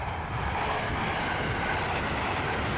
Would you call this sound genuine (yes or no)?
no